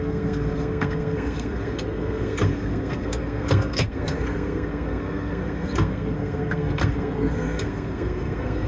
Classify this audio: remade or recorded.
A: remade